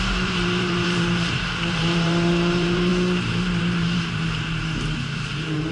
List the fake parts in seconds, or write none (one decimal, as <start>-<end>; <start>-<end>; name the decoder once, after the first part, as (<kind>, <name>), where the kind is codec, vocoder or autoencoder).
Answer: 0.0-2.9 (vocoder, BigVGAN v2); 3.6-5.7